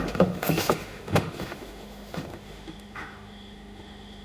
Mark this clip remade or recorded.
remade